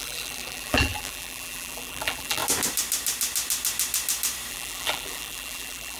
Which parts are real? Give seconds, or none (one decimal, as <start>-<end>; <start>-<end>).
2.4-4.5